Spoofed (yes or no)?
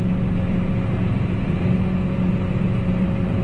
no